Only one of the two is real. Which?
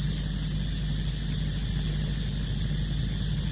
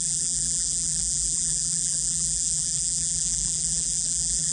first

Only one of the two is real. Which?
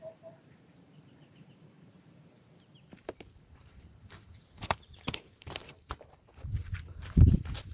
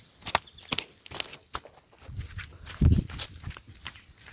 second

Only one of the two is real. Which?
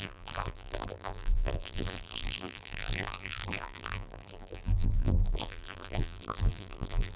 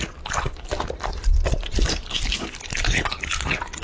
second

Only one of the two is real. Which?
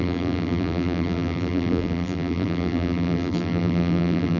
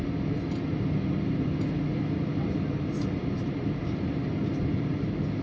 second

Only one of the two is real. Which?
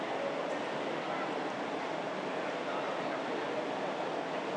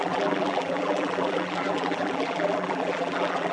first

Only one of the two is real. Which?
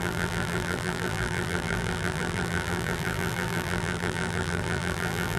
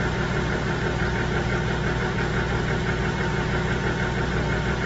second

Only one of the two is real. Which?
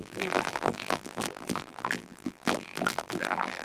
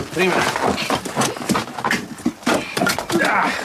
second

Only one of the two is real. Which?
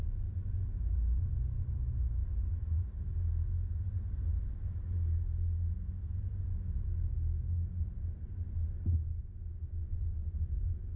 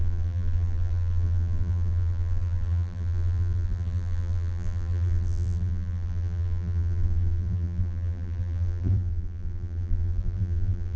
first